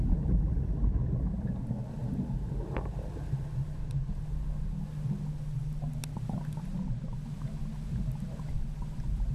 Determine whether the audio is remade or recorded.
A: recorded